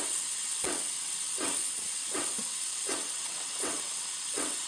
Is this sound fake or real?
fake